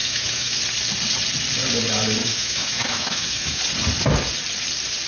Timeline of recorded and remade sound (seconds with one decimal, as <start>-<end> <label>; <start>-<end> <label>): 0.0-0.6 remade; 0.6-2.2 recorded; 2.2-3.6 remade; 3.6-5.1 recorded